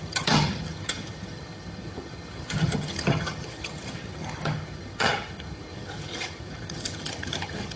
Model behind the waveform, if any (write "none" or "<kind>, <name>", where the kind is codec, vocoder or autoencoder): vocoder, HiFi-GAN